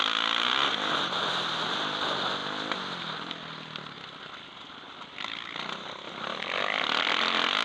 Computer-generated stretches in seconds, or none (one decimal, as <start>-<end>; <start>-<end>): none